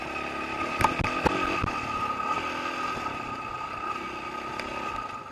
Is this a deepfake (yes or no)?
no